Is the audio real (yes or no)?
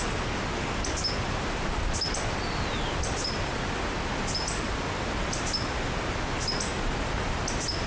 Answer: yes